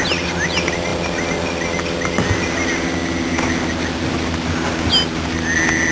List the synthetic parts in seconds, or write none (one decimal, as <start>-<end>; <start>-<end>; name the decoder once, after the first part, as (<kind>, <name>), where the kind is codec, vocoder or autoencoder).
none